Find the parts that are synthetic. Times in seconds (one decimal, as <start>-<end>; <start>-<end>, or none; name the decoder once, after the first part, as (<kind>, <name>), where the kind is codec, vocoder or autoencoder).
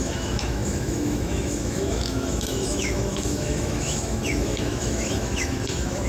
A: 0.0-6.1 (autoencoder, DAC-VAE)